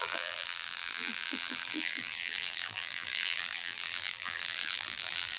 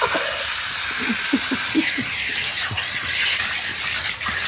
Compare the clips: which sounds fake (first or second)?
first